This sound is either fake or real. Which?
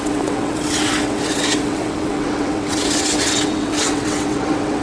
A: fake